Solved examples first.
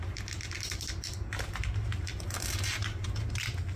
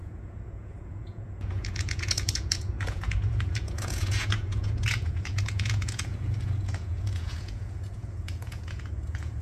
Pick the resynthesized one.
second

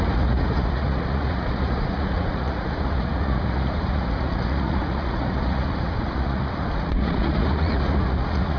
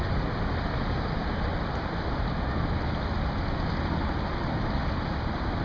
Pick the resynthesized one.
first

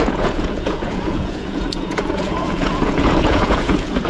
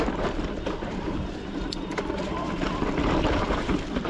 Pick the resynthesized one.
first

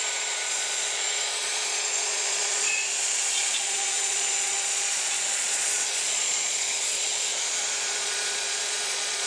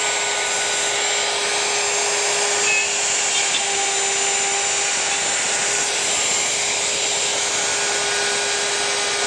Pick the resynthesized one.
first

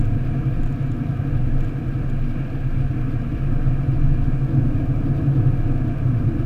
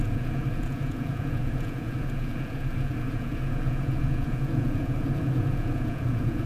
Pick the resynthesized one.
second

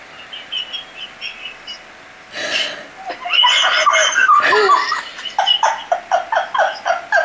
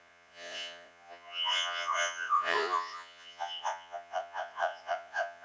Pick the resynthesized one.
second